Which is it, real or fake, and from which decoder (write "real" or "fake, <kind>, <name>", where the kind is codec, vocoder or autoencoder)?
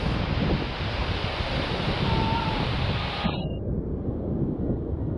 real